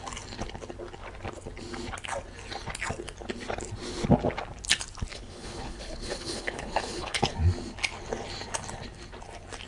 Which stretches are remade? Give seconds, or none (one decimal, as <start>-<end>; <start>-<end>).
5.1-7.2